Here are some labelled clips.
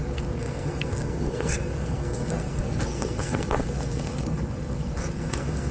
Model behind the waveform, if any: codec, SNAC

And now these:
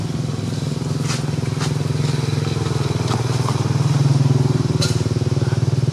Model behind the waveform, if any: none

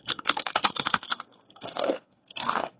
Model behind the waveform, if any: codec, SNAC